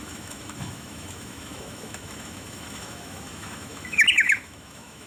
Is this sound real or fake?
fake